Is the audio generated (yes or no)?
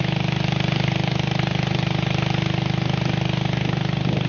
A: no